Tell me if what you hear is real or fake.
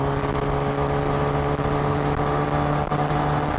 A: real